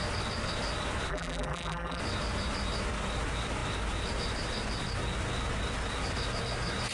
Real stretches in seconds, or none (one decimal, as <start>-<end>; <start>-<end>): 0.0-1.1; 2.0-6.9

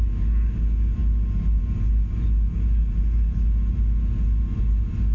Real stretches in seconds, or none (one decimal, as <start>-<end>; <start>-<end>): 0.0-5.1

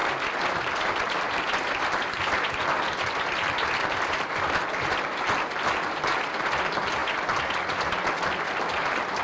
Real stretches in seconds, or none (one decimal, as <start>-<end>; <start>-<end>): 0.0-9.2

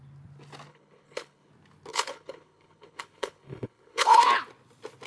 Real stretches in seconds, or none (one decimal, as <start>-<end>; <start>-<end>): 0.0-0.7; 1.5-1.9; 4.2-5.1

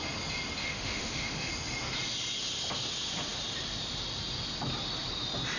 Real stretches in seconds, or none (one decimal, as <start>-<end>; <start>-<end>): 0.0-0.6; 1.5-5.6

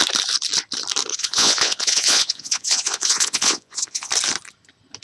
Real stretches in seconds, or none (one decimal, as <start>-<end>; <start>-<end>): 0.0-1.1; 4.1-5.0

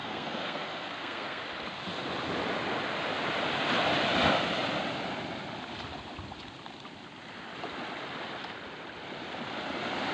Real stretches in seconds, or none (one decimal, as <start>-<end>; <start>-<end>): 1.4-10.1

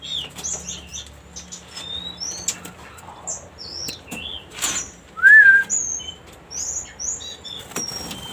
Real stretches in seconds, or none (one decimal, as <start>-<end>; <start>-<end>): 0.0-8.3